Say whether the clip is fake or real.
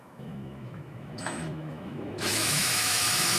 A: fake